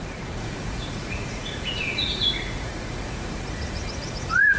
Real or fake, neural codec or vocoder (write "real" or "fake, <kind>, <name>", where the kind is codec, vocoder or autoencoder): fake, vocoder, Vocos